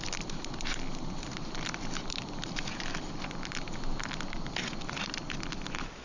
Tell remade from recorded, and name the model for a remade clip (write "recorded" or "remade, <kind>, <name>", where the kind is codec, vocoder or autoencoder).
recorded